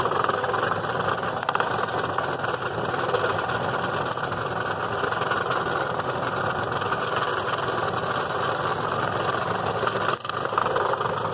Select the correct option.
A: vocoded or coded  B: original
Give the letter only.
B